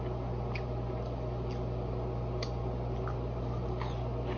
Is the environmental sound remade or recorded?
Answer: recorded